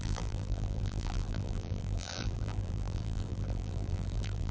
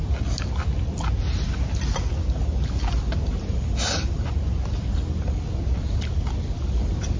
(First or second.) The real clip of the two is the second